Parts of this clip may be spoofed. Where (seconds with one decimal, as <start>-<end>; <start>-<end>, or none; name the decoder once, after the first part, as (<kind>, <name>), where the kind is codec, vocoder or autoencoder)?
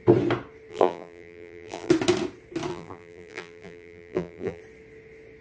0.7-1.9 (vocoder, BigVGAN v2); 2.7-4.6